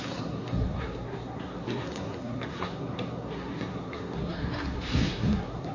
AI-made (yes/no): yes